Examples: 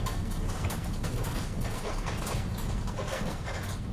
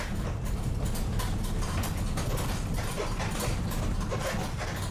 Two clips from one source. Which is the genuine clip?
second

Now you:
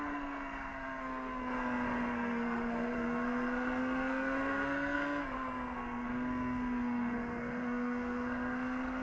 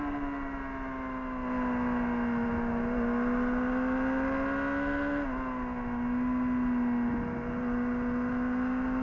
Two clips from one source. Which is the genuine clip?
second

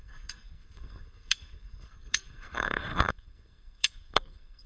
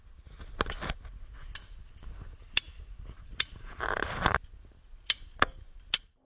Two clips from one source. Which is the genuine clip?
second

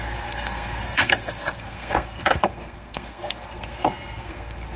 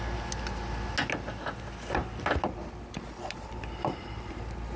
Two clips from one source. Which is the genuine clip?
second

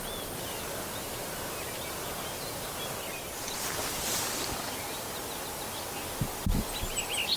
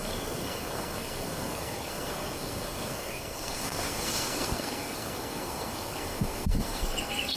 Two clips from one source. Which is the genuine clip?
first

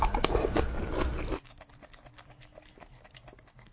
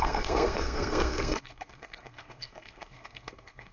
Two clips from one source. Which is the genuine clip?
first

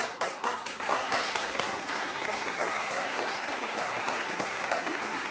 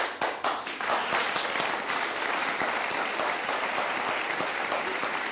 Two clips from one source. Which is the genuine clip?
second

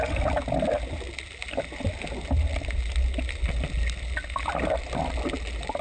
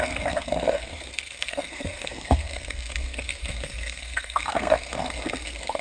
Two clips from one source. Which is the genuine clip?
first